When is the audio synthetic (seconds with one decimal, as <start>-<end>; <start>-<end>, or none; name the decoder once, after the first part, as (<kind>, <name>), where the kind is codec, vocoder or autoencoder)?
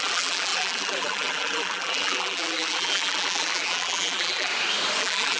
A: 0.0-4.5 (vocoder, BigVGAN v2); 5.0-5.4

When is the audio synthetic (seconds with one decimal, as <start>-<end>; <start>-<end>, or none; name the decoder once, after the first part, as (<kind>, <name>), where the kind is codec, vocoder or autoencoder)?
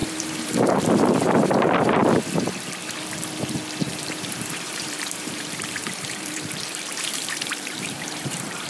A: 0.0-2.0 (vocoder, BigVGAN v2); 3.9-8.7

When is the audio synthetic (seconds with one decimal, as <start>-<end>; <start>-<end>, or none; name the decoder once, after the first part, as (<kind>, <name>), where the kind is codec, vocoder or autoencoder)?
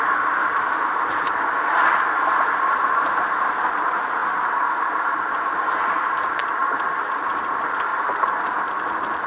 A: 0.4-1.3 (vocoder, BigVGAN v2); 4.2-4.9; 6.6-7.2; 7.9-8.4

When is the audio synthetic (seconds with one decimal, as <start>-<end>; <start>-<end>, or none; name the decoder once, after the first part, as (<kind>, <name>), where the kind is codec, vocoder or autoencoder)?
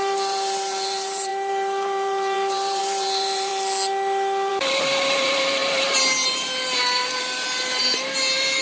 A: 0.0-3.5 (vocoder, BigVGAN v2); 4.5-8.6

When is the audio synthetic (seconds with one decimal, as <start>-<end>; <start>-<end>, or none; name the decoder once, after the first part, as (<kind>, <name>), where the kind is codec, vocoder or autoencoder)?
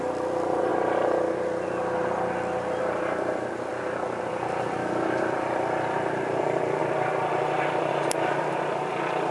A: 0.0-0.7 (vocoder, BigVGAN v2); 2.8-3.7; 4.3-9.3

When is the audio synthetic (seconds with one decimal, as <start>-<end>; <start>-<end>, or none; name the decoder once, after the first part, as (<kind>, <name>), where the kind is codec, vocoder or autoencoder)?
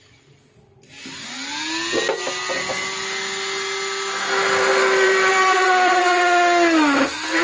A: 4.7-5.7 (vocoder, BigVGAN v2)